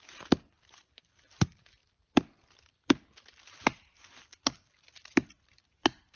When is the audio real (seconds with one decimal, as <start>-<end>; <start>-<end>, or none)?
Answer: 0.0-6.2